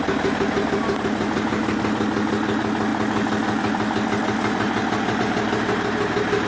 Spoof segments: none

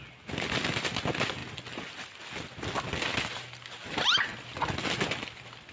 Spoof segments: none

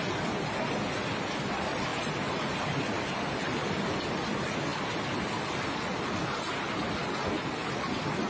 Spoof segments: none

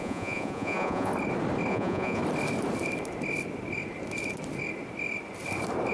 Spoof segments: 0.0-1.1 (vocoder, Vocos); 1.7-2.2